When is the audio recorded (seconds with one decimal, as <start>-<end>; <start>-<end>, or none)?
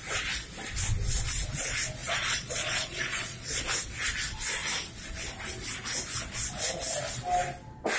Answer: 0.0-2.0; 3.6-8.0